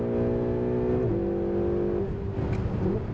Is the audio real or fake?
real